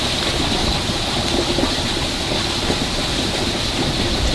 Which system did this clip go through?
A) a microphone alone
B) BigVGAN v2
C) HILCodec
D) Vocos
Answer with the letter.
A